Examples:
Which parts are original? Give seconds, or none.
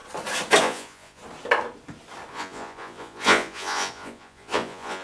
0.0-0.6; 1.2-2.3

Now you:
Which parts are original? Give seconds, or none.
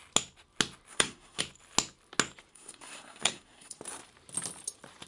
0.0-0.9; 1.4-2.5; 3.8-5.1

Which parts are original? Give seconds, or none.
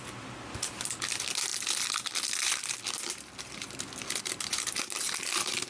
0.0-5.7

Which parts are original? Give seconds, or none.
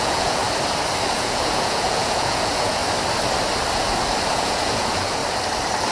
0.4-1.1; 2.8-4.3; 5.2-5.9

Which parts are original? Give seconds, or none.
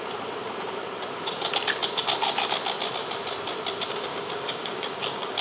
0.0-4.1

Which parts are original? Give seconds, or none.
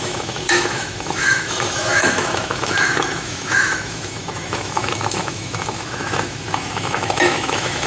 none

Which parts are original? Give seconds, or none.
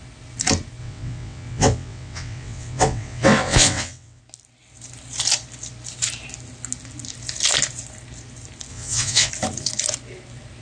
0.0-0.8; 4.2-8.7; 9.3-10.6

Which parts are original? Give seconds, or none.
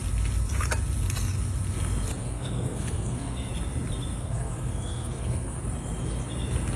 0.0-2.2; 3.5-4.2; 5.6-6.8